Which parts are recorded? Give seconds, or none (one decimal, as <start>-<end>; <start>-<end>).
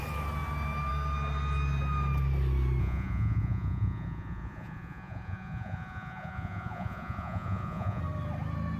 0.0-2.8; 8.0-8.8